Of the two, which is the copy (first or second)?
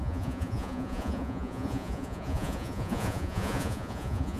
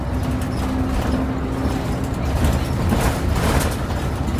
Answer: first